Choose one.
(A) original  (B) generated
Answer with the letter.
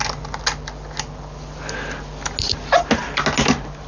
A